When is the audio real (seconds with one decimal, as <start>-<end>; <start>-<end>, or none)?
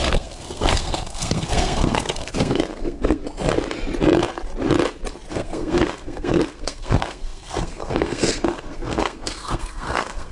3.2-5.3